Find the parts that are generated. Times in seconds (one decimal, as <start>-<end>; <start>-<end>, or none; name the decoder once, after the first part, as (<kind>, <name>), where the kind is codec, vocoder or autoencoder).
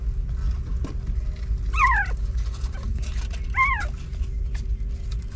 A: none